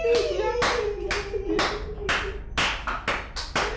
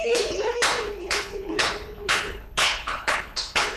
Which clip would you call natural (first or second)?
first